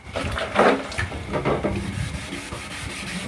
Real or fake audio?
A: real